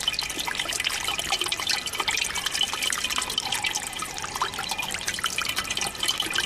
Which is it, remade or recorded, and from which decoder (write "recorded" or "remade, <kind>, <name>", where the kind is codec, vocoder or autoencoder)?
recorded